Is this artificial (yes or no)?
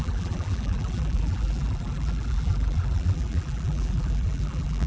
yes